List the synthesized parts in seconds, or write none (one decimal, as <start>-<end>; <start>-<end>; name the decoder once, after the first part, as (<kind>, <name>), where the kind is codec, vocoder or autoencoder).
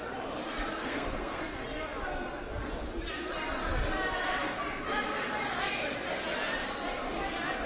0.8-1.4 (codec, SNAC)